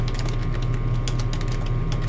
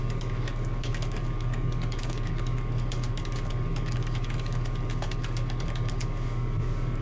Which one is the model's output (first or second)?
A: second